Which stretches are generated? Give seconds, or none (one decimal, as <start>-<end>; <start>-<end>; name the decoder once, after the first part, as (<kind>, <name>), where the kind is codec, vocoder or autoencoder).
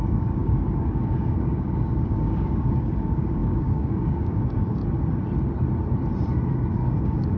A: 0.0-4.8 (codec, DAC); 6.7-7.4